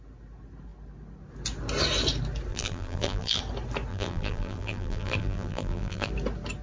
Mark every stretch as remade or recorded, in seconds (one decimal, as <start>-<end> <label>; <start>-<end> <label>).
0.0-2.5 recorded; 2.5-3.4 remade; 3.4-3.9 recorded; 3.9-6.1 remade; 6.1-6.6 recorded